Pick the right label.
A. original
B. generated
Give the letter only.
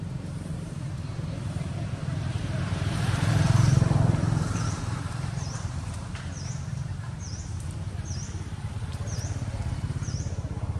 B